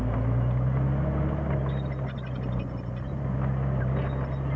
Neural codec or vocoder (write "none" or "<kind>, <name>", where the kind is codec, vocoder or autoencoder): none